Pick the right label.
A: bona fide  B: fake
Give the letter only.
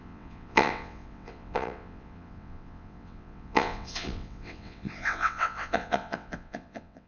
B